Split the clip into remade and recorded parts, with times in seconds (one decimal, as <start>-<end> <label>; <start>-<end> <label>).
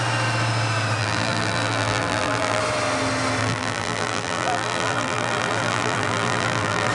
0.0-1.0 recorded; 1.0-2.6 remade; 2.6-3.4 recorded; 3.4-6.9 remade